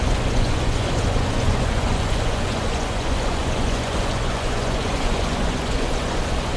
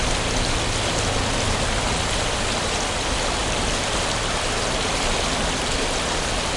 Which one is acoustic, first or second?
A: second